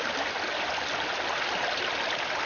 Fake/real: real